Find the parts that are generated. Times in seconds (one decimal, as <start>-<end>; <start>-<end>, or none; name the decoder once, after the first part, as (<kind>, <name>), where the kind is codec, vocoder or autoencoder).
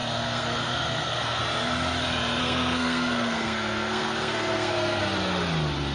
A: 0.0-1.4 (codec, SNAC); 2.4-5.0